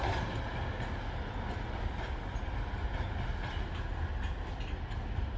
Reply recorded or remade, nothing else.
recorded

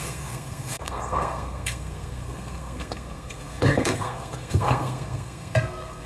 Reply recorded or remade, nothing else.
remade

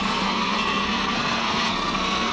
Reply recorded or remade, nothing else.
remade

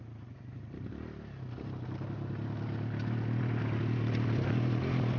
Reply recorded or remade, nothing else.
recorded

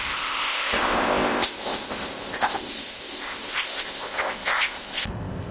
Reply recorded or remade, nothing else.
remade